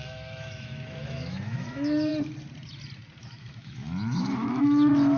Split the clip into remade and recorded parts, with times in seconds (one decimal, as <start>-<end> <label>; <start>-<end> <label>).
0.0-2.1 remade; 2.1-3.2 recorded; 3.2-5.2 remade